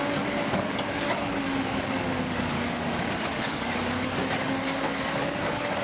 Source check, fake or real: fake